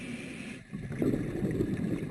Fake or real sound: real